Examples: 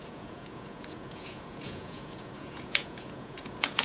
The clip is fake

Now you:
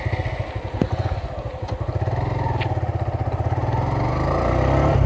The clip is real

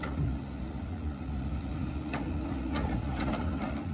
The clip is fake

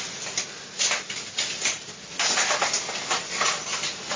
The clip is real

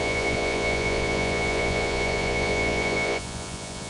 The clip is fake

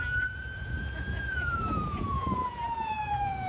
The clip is fake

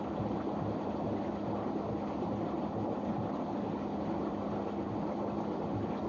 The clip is real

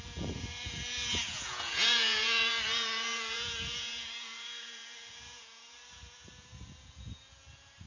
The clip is fake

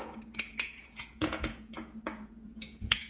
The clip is fake